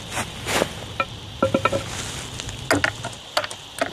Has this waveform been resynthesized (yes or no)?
no